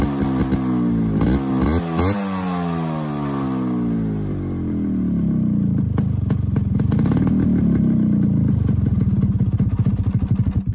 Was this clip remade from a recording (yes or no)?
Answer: no